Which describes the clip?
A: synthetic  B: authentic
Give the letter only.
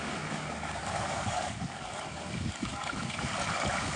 A